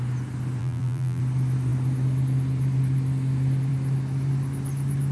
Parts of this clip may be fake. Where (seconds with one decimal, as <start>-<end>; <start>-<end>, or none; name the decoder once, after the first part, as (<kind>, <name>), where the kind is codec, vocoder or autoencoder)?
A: 0.6-1.2 (vocoder, BigVGAN v2)